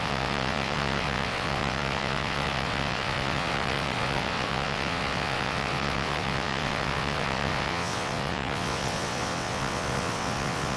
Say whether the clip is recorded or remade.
remade